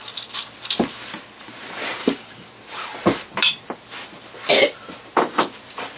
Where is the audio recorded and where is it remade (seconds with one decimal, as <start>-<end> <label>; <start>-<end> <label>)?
0.0-2.0 recorded; 2.0-2.5 remade; 2.5-6.0 recorded